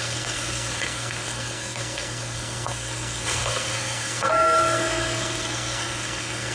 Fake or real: fake